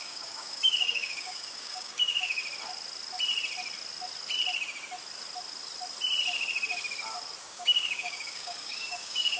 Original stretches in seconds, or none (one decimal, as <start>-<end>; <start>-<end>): 2.4-7.4